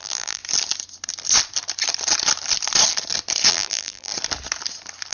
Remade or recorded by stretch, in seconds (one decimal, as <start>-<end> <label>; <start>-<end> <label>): 0.0-0.4 remade; 0.4-3.5 recorded; 3.5-4.1 remade; 4.1-5.1 recorded